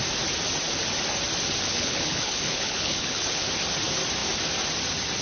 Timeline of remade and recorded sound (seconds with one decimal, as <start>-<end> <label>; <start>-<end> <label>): 0.0-1.7 recorded; 1.7-3.4 remade; 3.4-5.2 recorded